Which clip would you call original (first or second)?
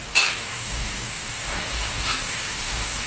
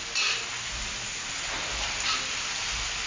second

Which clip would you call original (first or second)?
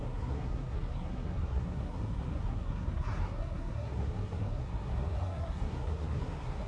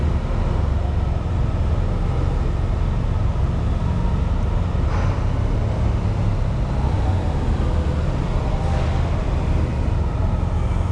second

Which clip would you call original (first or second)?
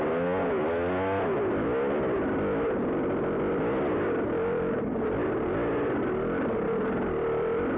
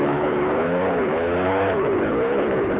first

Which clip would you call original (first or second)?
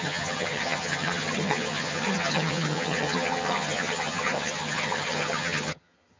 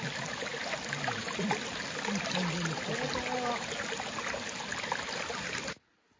second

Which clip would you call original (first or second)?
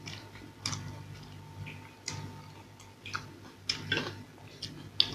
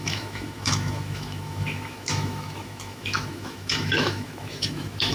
first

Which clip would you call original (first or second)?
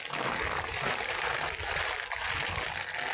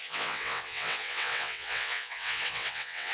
first